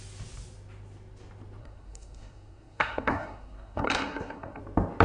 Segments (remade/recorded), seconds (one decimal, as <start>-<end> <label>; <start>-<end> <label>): 0.0-1.6 recorded; 1.6-4.6 remade; 4.6-5.0 recorded

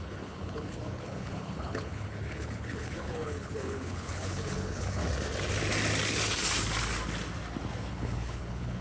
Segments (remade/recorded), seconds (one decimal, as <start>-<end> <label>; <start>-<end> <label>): 0.0-5.0 remade; 5.0-7.9 recorded; 7.9-8.8 remade

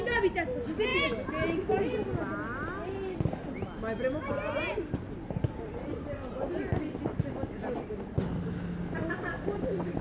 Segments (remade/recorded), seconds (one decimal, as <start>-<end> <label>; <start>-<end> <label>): 0.0-0.9 recorded; 0.9-1.8 remade; 1.8-10.0 recorded

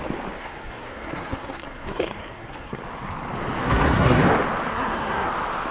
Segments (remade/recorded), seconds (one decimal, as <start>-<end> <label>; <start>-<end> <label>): 0.0-0.4 recorded; 0.4-2.8 remade; 2.8-3.6 recorded; 3.6-4.2 remade; 4.2-4.7 recorded; 4.7-5.3 remade; 5.3-5.7 recorded

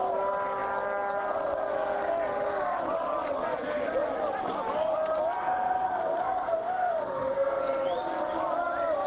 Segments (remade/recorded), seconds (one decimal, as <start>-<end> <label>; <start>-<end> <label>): 0.0-5.4 recorded; 5.4-7.6 remade; 7.6-9.1 recorded

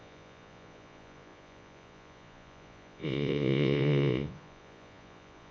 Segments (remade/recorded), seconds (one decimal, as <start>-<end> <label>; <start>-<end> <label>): 0.0-5.5 remade